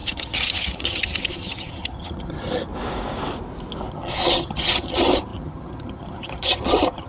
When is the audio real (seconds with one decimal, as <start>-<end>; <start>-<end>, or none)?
2.7-3.9